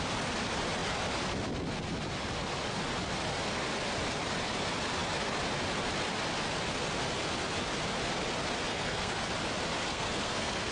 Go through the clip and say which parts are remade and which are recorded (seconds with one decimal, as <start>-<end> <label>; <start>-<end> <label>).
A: 0.0-8.7 recorded; 8.7-9.3 remade; 9.3-9.9 recorded; 9.9-10.7 remade